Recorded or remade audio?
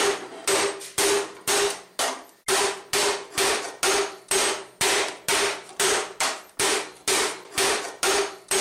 recorded